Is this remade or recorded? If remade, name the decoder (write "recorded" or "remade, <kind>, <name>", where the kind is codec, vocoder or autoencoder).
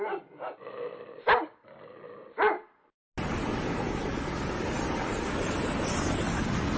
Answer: recorded